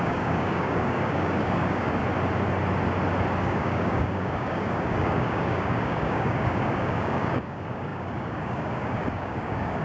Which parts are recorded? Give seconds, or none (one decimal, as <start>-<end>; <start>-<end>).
2.0-3.4